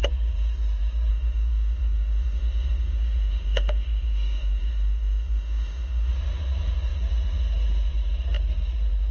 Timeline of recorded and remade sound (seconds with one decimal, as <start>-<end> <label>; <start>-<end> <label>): 0.0-1.1 recorded; 1.1-6.1 remade; 6.1-9.1 recorded